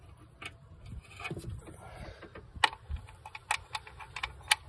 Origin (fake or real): real